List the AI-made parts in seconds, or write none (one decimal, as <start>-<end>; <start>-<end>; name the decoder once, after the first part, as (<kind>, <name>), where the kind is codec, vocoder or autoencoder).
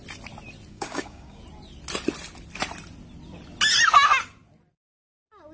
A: 0.7-1.4 (codec, DAC)